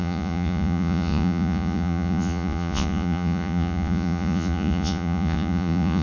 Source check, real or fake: fake